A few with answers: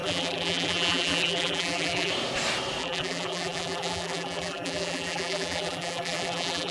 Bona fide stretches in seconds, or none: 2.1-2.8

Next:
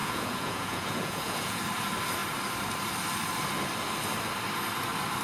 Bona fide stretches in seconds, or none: 1.6-5.2

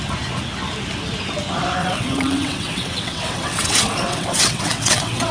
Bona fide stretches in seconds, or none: 0.0-1.8

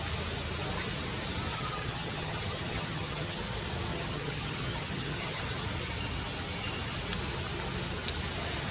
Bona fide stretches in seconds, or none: 0.0-1.5; 3.4-3.9; 5.4-8.7

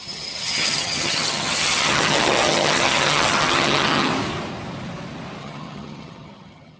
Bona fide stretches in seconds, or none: 4.1-5.4